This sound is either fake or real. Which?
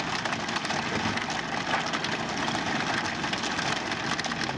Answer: real